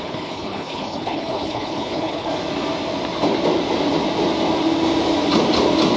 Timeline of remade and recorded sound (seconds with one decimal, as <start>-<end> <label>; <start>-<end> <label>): 0.0-2.3 remade; 2.3-6.0 recorded